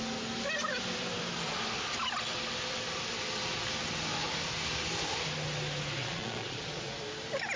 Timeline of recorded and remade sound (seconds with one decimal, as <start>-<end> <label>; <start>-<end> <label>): 0.0-6.0 recorded; 6.0-6.9 remade; 6.9-7.6 recorded